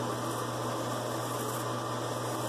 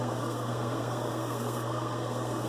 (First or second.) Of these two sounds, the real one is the first